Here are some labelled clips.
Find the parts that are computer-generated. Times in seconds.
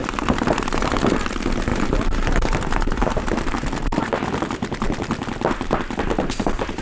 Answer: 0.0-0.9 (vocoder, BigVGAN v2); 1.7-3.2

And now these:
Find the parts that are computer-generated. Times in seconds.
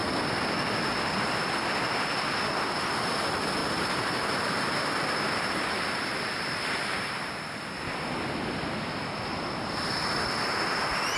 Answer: 3.6-7.3 (vocoder, BigVGAN v2)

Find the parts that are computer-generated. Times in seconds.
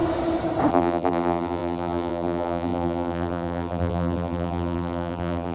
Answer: 0.7-5.5 (vocoder, BigVGAN v2)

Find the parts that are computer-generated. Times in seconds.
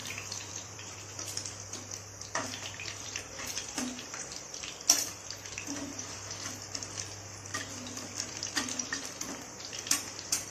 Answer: 0.5-7.5 (vocoder, BigVGAN v2); 8.2-10.5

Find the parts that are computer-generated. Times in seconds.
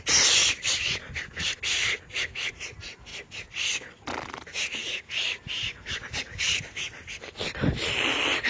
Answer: none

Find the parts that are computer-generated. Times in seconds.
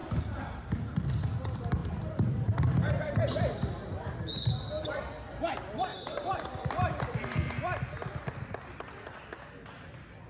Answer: 0.0-1.1 (vocoder, BigVGAN v2); 1.8-3.2; 5.9-7.2